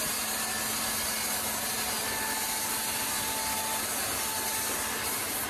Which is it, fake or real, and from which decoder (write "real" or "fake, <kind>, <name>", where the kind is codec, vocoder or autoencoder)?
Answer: real